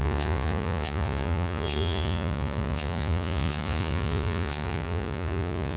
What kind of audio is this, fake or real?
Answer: fake